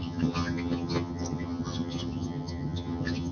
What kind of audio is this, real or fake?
fake